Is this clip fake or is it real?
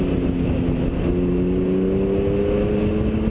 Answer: real